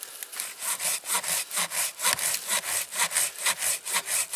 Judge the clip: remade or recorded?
recorded